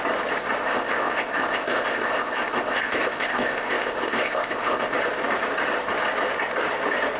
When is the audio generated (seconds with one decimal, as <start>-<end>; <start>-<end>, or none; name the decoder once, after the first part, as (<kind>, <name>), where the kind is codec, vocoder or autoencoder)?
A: 0.6-4.9 (codec, ZipCodec)